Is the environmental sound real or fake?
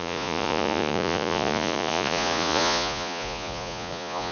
fake